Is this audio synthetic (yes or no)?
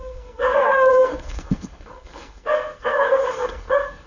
yes